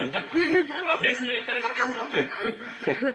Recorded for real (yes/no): no